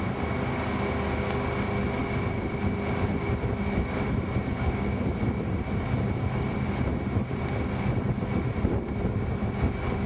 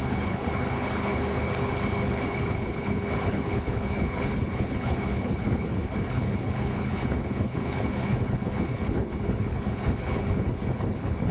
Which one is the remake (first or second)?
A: second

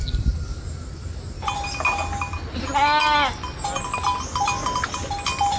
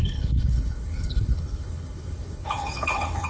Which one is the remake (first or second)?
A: second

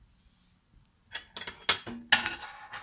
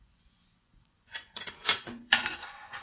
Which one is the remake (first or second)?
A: second